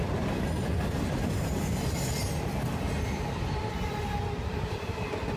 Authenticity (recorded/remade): recorded